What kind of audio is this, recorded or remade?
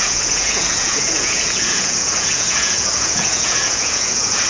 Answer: remade